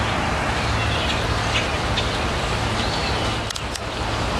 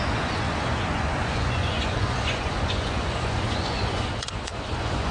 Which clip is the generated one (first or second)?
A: second